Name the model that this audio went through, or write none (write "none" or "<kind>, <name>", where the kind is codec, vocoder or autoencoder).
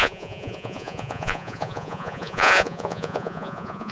vocoder, Vocos